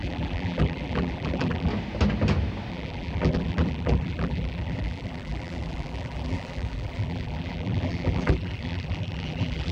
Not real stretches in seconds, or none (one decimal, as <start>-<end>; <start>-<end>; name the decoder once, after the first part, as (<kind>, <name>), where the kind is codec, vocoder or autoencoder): 0.0-1.7 (vocoder, BigVGAN v2); 2.7-9.7